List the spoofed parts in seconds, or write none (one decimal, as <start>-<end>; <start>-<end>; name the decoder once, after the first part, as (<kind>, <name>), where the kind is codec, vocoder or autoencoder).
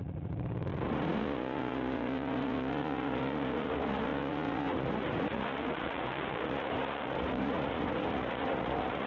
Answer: 0.0-9.1 (vocoder, Vocos)